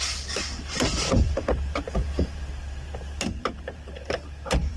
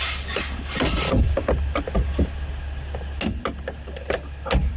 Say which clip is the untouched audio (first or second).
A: second